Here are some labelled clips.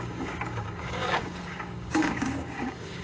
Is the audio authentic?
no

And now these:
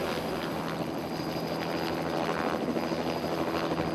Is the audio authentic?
yes